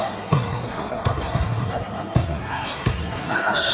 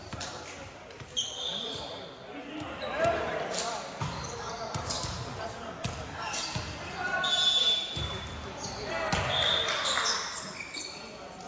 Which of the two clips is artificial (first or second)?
first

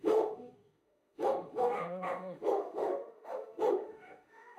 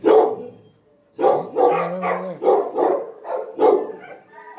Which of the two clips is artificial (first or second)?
first